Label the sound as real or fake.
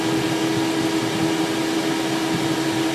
real